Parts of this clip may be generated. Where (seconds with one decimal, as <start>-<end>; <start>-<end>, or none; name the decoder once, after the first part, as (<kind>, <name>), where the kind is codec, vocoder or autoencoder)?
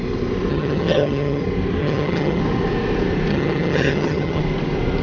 0.5-1.4 (vocoder, HiFi-GAN); 1.8-2.4; 3.3-4.4